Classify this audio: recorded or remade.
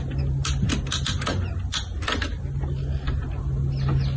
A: recorded